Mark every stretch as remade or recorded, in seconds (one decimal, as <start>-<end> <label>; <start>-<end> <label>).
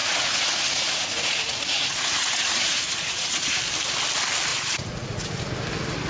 0.0-3.6 remade; 3.6-4.5 recorded; 4.5-5.5 remade; 5.5-6.1 recorded